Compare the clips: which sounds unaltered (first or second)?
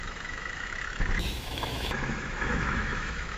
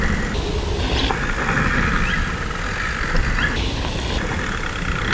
second